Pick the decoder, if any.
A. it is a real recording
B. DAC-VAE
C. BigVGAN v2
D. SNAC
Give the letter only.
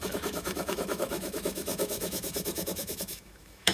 B